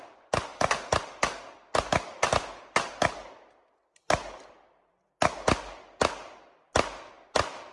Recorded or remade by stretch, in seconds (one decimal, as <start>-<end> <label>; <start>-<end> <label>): 0.0-7.7 recorded